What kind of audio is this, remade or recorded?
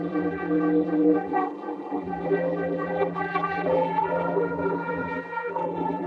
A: remade